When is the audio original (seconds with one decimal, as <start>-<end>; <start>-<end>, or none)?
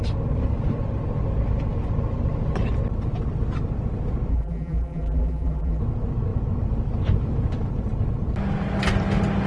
0.0-4.3; 5.8-9.5